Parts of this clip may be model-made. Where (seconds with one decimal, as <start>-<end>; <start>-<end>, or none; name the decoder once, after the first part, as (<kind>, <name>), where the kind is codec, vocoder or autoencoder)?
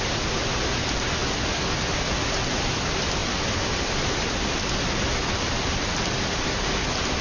none